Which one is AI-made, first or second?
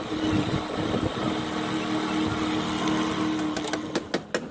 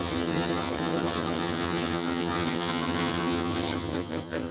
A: second